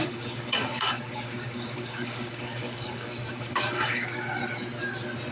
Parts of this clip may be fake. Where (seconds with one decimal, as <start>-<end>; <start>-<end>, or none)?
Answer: 0.0-4.4